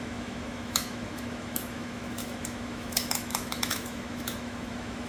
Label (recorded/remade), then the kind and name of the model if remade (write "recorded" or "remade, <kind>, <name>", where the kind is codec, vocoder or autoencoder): remade, autoencoder, DAC-VAE